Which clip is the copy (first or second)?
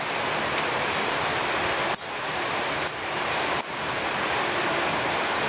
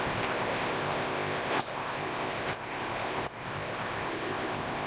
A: second